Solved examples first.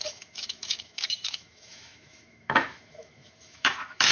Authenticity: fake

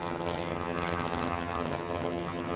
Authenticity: fake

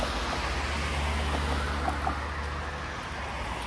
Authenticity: real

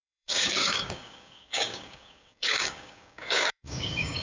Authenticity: fake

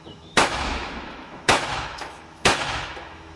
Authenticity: fake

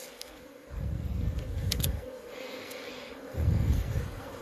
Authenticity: fake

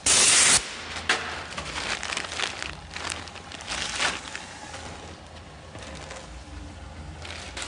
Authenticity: real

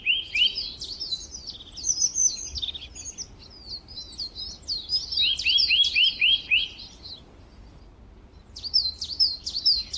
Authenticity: real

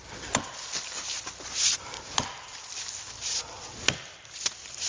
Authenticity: real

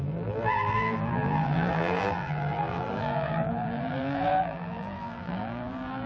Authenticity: fake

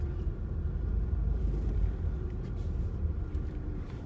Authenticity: fake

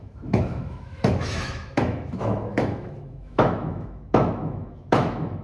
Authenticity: fake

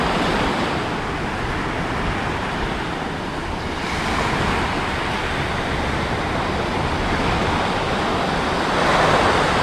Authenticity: real